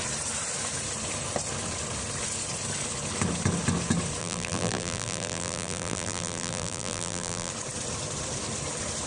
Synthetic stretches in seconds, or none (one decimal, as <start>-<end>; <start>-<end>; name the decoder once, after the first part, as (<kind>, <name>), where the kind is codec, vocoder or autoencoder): 4.2-7.5 (vocoder, BigVGAN v2)